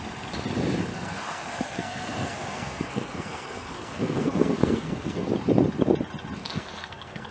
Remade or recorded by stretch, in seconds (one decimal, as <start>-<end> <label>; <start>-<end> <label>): 0.0-0.9 recorded; 0.9-5.3 remade; 5.3-6.4 recorded; 6.4-7.3 remade

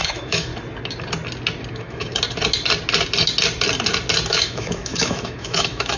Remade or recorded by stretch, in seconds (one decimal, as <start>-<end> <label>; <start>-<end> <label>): 0.0-0.5 remade; 0.5-1.7 recorded; 1.7-2.1 remade; 2.1-4.3 recorded; 4.3-6.0 remade

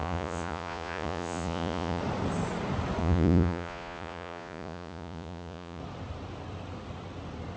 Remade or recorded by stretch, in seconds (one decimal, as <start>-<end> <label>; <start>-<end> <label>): 0.0-2.0 remade; 2.0-3.0 recorded; 3.0-5.8 remade; 5.8-7.6 recorded